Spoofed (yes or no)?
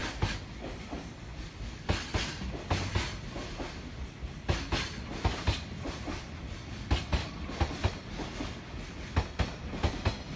no